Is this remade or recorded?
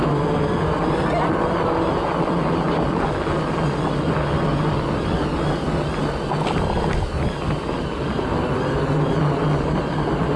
recorded